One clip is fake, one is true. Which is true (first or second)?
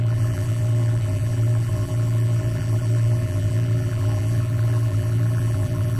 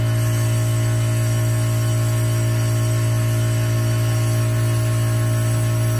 second